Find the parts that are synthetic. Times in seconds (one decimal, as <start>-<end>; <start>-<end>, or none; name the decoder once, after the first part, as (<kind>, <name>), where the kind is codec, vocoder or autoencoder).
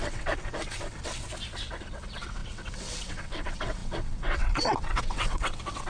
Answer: 0.0-1.2 (vocoder, WaveNeXt); 1.7-5.9